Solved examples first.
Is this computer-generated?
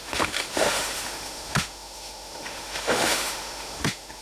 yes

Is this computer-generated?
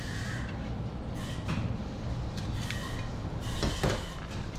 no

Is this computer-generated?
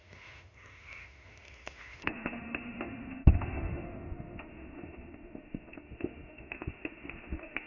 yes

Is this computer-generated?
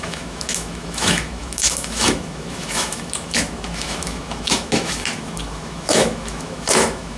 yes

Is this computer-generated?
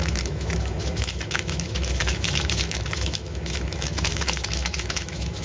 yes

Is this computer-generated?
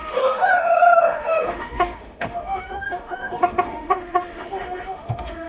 yes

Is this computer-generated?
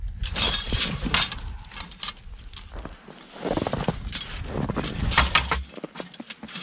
no